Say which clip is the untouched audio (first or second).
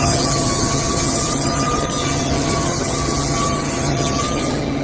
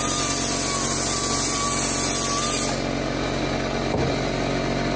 second